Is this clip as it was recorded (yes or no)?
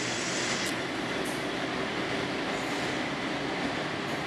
yes